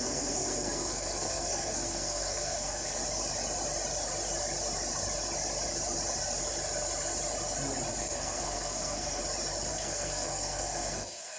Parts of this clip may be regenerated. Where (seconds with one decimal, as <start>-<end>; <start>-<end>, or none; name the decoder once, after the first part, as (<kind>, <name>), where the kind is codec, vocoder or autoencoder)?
0.0-3.0 (codec, SNAC); 8.0-9.2; 9.7-11.4